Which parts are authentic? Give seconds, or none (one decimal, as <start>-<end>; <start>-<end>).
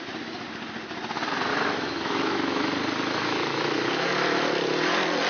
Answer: 0.0-1.5; 2.7-3.2; 4.1-5.3